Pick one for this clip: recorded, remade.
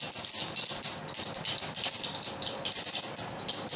recorded